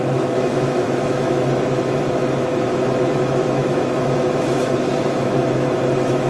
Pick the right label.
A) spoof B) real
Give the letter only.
A